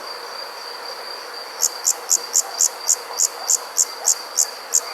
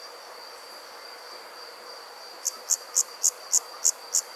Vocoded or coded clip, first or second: second